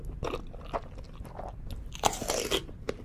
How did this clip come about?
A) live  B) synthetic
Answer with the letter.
A